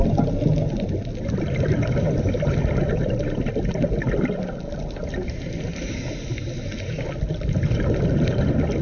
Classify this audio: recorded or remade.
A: recorded